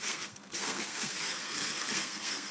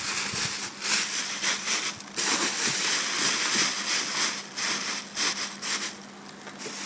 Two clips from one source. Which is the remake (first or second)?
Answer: first